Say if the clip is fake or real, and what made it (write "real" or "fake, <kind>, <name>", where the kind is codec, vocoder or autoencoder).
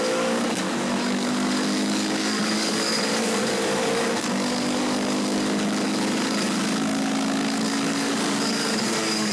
fake, codec, DAC